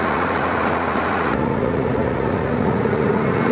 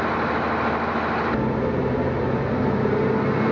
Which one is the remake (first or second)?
first